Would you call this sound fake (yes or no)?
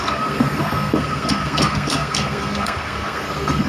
yes